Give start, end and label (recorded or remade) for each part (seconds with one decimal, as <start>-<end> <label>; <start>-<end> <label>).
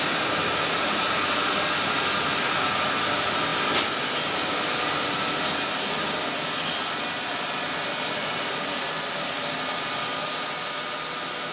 0.0-11.5 recorded